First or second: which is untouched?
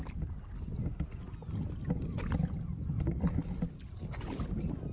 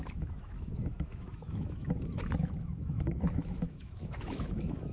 first